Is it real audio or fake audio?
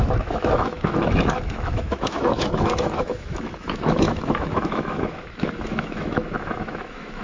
fake